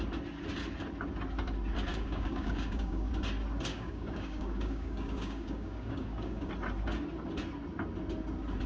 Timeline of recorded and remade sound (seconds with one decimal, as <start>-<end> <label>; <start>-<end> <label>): 0.0-1.9 recorded; 1.9-3.1 remade; 3.1-3.7 recorded; 3.7-6.5 remade; 6.5-8.7 recorded